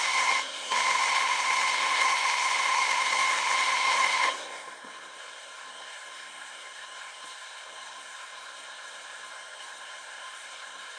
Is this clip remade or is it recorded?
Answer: remade